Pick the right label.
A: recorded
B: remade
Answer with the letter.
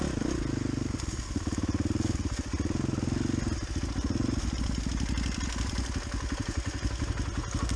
A